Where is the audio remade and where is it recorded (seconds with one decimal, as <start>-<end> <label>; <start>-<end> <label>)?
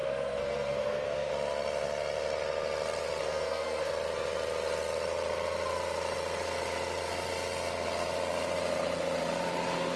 0.0-1.3 remade; 1.3-3.2 recorded; 3.2-3.9 remade; 3.9-10.0 recorded